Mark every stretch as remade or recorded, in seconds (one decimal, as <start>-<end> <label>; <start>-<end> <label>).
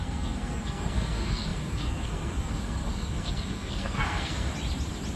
0.0-4.5 remade; 4.5-5.2 recorded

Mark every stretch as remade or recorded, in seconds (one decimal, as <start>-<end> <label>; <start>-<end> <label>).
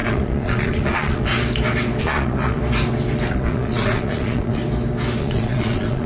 0.0-1.3 remade; 1.3-2.0 recorded; 2.0-2.6 remade; 2.6-3.3 recorded; 3.3-4.6 remade; 4.6-5.2 recorded; 5.2-6.1 remade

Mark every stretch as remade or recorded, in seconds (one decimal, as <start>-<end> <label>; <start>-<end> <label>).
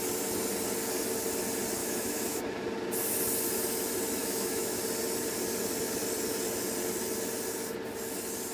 0.0-1.8 recorded; 1.8-2.4 remade; 2.4-4.2 recorded; 4.2-4.8 remade; 4.8-8.5 recorded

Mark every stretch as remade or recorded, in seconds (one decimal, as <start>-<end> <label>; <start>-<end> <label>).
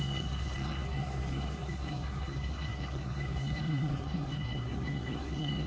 0.0-5.7 remade